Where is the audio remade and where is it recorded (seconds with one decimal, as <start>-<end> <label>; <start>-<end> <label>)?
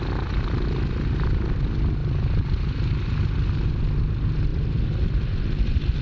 0.0-2.0 recorded; 2.0-2.9 remade; 2.9-4.5 recorded; 4.5-6.0 remade